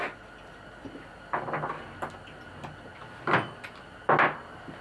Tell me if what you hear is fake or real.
real